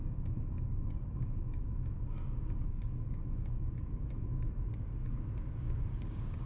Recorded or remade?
remade